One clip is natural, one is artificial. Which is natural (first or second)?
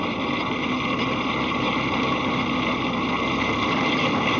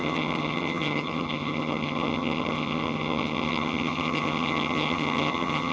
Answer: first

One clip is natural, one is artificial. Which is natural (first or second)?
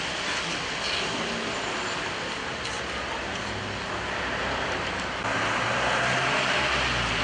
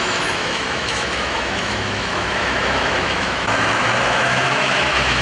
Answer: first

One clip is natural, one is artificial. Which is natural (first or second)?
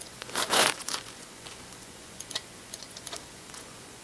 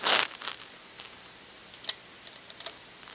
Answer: second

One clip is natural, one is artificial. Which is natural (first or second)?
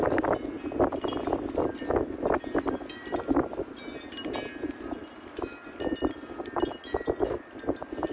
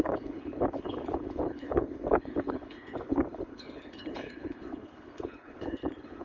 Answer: first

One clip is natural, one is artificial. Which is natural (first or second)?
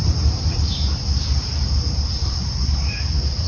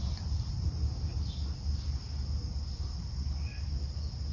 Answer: second